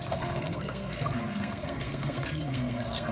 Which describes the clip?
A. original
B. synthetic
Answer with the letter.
B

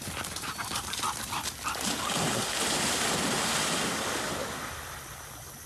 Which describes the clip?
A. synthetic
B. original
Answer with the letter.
B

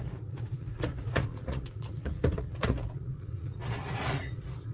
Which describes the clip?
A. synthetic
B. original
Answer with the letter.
A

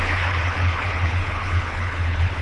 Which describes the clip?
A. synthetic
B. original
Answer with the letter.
A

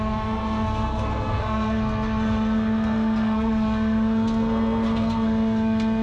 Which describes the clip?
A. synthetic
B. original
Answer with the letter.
A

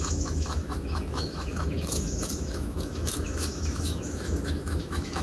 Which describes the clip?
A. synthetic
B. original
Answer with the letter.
A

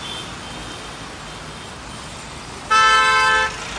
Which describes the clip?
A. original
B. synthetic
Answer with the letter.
A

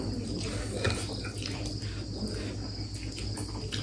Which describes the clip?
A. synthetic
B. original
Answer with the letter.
B